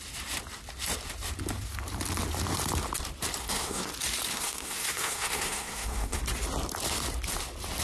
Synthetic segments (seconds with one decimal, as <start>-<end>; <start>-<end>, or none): 3.4-3.9; 4.3-6.2